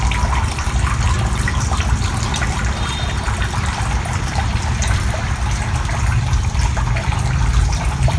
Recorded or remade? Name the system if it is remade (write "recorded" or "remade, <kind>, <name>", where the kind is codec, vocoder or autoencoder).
remade, vocoder, BigVGAN v2